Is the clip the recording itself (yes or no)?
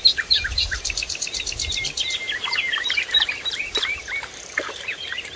no